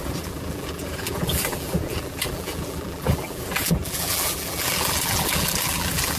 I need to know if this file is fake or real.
fake